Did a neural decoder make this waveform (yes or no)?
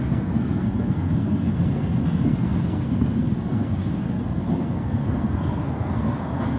yes